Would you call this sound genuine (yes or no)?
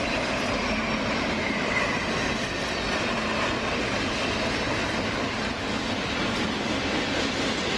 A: no